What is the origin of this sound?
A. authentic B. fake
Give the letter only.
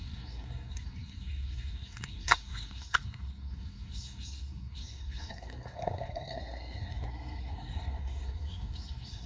B